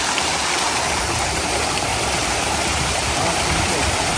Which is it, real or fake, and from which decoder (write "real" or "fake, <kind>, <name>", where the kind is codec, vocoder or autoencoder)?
fake, vocoder, BigVGAN v2